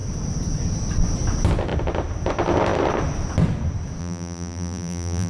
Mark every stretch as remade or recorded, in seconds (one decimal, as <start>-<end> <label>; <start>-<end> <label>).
0.0-4.0 recorded; 4.0-5.3 remade